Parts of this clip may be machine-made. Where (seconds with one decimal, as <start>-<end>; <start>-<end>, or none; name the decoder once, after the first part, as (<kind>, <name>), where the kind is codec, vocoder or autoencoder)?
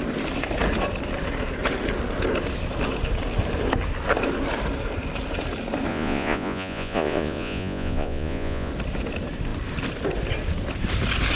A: 5.9-8.7 (vocoder, Vocos)